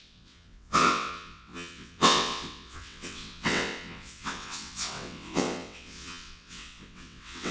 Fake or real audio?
fake